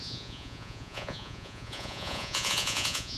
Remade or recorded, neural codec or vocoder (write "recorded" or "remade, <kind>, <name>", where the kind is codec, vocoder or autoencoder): remade, vocoder, Vocos